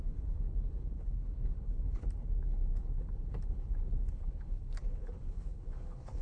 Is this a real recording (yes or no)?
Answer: no